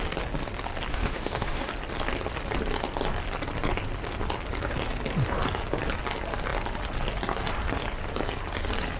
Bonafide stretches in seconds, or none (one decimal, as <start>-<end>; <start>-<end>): 0.0-0.9; 1.7-9.0